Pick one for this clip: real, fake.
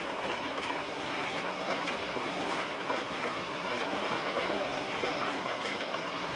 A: fake